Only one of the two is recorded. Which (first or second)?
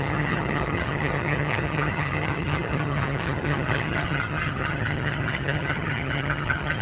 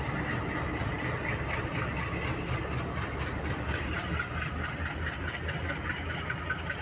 second